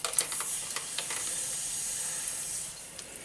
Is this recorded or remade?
recorded